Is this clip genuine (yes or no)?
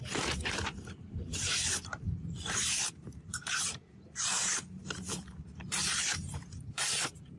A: no